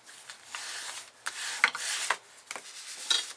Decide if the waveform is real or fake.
real